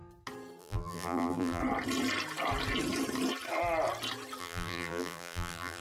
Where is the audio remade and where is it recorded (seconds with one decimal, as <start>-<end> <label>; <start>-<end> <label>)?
0.0-0.6 recorded; 0.6-1.6 remade; 1.6-4.4 recorded; 4.4-5.8 remade